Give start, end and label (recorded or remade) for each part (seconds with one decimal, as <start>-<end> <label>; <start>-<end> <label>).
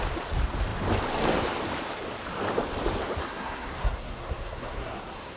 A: 0.0-3.2 recorded; 3.2-5.4 remade